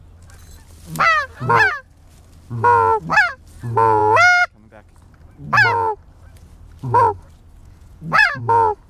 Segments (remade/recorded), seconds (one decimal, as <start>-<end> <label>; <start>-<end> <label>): 0.0-7.6 recorded; 7.6-8.4 remade; 8.4-8.9 recorded